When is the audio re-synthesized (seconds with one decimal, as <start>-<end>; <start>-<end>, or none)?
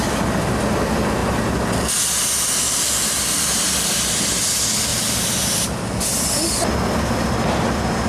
none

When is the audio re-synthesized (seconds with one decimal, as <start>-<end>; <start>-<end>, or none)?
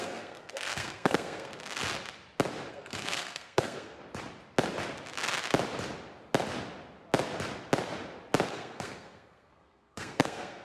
0.0-1.5; 2.7-4.0; 8.5-10.6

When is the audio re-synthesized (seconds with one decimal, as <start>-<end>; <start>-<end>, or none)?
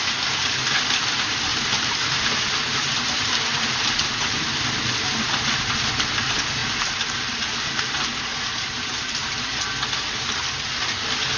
1.5-3.9; 6.6-8.2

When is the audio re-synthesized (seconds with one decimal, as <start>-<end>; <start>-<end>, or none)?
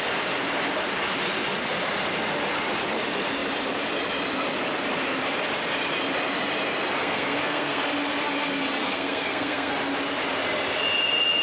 7.0-7.8; 8.8-9.7